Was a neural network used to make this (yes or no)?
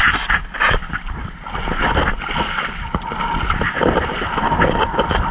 no